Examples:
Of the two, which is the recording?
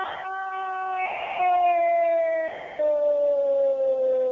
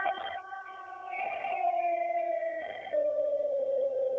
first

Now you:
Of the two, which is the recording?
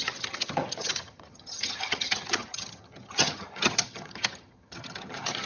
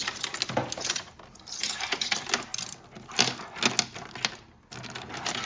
second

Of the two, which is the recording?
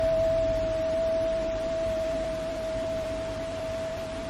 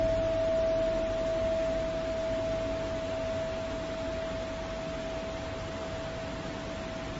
second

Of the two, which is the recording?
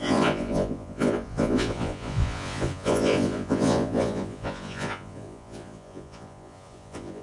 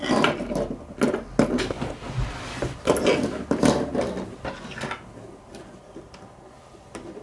second